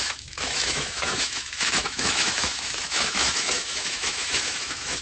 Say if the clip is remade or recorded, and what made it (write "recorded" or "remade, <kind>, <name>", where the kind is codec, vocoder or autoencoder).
remade, autoencoder, DAC-VAE